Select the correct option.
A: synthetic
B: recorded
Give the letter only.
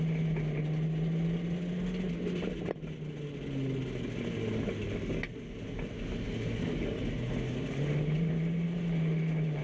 B